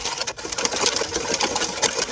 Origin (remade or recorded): recorded